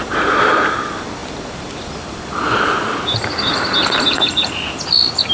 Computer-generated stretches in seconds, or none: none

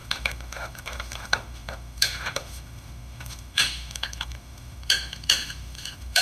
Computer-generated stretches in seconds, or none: 0.0-6.2 (autoencoder, DAC-VAE)

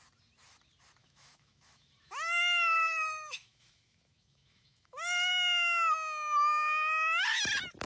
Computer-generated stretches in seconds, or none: 1.0-5.3 (autoencoder, DAC-VAE)